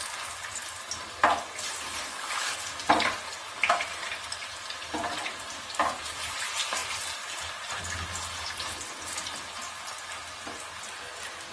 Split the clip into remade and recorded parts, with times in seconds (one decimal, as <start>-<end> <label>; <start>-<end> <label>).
0.0-2.1 recorded; 2.1-2.7 remade; 2.7-11.5 recorded